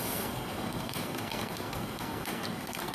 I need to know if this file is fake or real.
fake